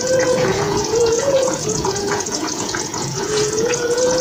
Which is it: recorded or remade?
remade